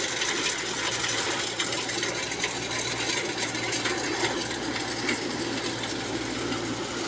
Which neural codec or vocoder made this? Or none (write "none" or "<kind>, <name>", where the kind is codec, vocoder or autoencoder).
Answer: none